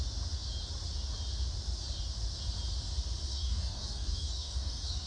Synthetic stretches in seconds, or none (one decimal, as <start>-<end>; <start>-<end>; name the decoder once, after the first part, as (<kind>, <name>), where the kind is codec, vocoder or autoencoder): 3.3-5.1 (codec, DAC)